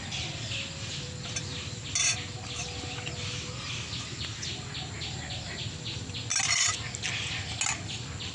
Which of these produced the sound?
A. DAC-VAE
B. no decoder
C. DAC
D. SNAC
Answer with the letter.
B